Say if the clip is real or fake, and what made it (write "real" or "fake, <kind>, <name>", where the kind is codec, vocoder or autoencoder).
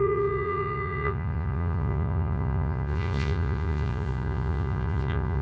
fake, vocoder, Vocos